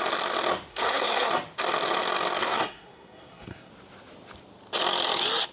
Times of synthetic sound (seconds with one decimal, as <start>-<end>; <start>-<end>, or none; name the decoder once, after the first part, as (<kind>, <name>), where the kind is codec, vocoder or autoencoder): 0.7-1.3 (codec, SNAC); 2.4-3.7